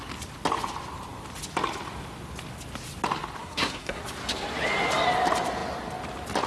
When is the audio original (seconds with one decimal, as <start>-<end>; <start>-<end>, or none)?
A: 0.0-3.4; 4.0-6.5